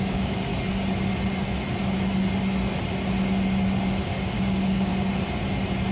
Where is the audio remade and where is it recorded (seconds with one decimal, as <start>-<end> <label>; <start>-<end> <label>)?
0.0-0.5 remade; 0.5-4.0 recorded; 4.0-4.9 remade; 4.9-5.9 recorded